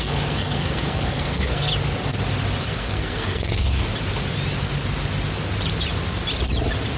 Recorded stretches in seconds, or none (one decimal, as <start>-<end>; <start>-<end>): 1.7-2.6; 3.8-7.0